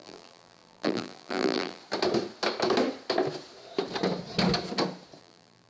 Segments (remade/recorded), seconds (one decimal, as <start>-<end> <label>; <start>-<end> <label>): 0.0-1.8 remade; 1.8-5.2 recorded; 5.2-5.7 remade